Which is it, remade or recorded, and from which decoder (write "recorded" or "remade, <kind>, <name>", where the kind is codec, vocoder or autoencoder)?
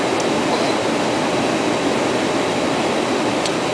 recorded